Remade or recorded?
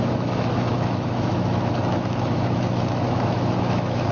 remade